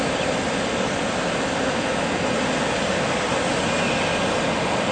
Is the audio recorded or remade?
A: recorded